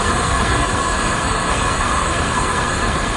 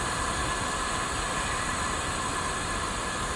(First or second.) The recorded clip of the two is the second